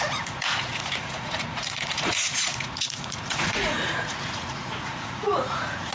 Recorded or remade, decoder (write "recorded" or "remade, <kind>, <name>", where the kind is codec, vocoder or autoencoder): remade, vocoder, Vocos